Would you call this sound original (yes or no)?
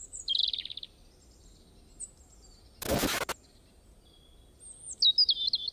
yes